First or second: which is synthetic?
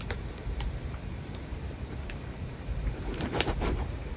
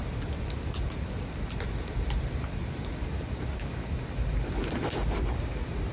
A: first